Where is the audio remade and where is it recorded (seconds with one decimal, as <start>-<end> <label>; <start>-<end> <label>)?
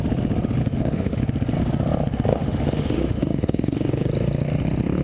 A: 0.0-0.6 recorded; 0.6-1.2 remade; 1.2-2.3 recorded; 2.3-4.1 remade; 4.1-5.0 recorded